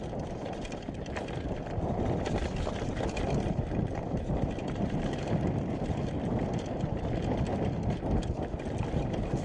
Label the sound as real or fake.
real